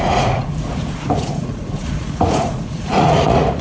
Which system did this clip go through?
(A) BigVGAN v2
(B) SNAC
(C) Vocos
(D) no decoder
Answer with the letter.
C